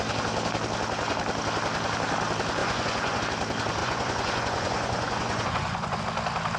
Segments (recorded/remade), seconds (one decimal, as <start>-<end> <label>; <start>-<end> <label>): 0.0-2.6 recorded; 2.6-3.2 remade; 3.2-3.8 recorded; 3.8-6.0 remade; 6.0-6.6 recorded